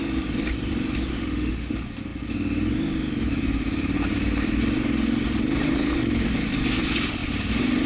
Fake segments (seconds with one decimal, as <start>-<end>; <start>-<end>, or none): 1.1-1.7